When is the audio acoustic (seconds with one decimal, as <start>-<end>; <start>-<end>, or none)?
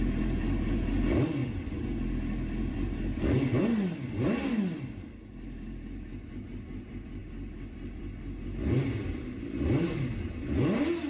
0.0-11.1